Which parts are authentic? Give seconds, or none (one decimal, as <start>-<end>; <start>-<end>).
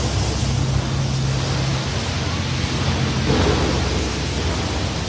0.0-5.1